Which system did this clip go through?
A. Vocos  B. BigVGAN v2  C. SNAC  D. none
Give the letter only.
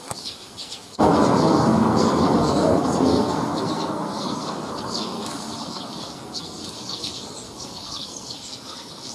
C